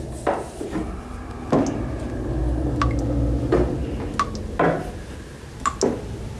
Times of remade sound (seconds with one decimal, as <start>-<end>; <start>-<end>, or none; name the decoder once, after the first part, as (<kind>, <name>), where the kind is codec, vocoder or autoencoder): none